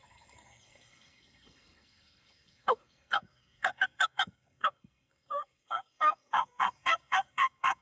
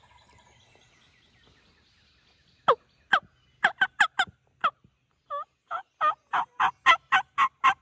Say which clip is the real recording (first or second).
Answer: second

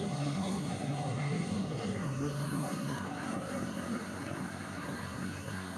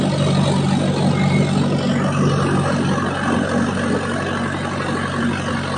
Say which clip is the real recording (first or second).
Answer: second